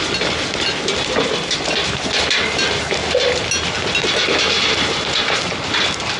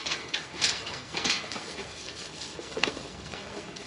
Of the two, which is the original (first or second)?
first